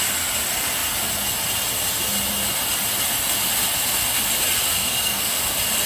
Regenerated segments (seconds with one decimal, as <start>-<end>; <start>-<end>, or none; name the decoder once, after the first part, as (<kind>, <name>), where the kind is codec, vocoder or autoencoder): 4.8-5.4 (codec, SNAC)